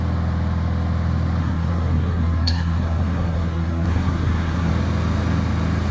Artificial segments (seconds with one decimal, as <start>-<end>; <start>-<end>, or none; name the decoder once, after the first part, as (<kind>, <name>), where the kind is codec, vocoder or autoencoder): 1.4-4.7 (codec, SNAC)